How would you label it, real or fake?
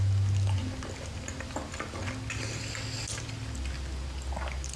real